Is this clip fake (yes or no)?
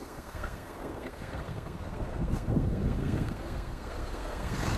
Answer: yes